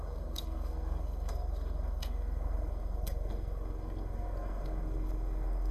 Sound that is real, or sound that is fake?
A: fake